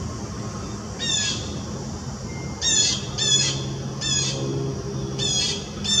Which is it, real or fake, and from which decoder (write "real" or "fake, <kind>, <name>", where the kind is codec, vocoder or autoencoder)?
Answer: real